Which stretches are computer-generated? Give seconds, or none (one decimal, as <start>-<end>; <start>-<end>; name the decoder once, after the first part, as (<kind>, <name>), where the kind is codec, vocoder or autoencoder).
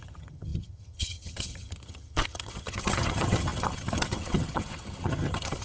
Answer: 0.0-5.6 (vocoder, HiFi-GAN)